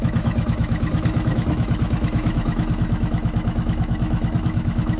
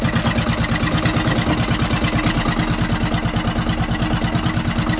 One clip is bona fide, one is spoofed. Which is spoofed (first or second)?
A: first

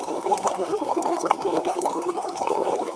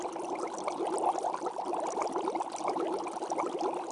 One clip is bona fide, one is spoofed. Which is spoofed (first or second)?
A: first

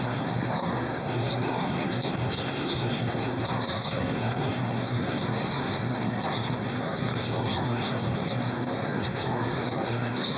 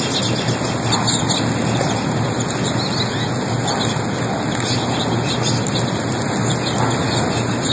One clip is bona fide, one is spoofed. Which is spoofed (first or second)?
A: first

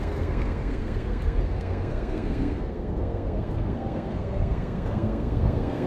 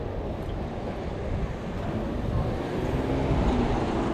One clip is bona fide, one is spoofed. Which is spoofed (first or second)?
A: first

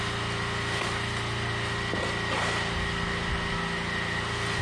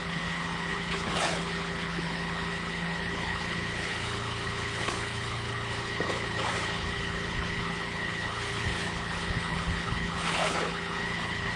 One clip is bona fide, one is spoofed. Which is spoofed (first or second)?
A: second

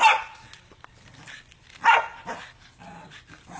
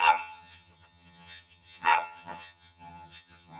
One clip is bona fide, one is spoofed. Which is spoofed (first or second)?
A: second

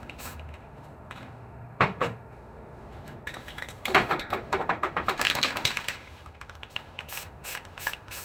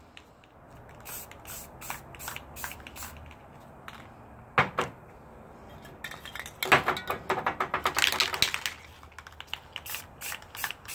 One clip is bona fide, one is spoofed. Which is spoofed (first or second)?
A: first